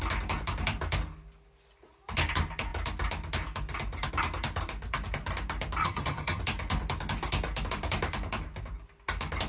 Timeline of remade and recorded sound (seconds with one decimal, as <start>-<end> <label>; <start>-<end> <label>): 0.0-5.8 recorded; 5.8-6.4 remade; 6.4-9.5 recorded